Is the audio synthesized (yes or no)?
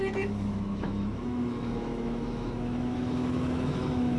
yes